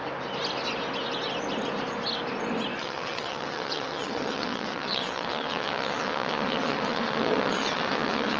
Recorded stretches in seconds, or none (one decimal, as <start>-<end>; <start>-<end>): 0.0-2.8